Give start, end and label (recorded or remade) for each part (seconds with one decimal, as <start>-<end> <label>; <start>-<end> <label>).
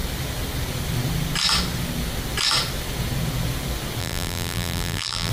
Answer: 0.0-4.0 recorded; 4.0-5.3 remade